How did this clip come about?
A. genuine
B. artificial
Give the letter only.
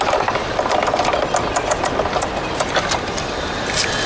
A